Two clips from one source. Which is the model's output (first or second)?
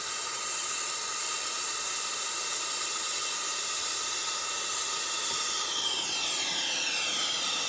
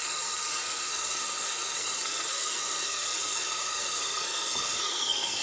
second